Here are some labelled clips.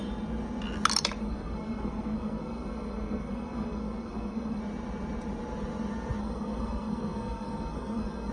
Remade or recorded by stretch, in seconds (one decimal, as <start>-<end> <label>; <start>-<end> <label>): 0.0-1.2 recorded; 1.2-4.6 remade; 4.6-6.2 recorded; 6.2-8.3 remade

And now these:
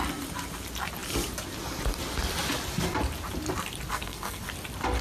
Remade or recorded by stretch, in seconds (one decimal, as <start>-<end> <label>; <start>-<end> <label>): 0.0-3.9 recorded; 3.9-4.4 remade; 4.4-5.0 recorded

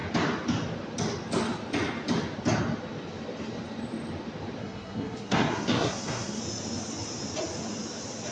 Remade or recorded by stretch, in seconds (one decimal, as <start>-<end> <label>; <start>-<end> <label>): 0.0-4.6 recorded; 4.6-6.4 remade; 6.4-8.3 recorded